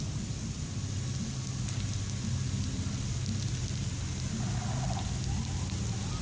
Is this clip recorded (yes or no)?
yes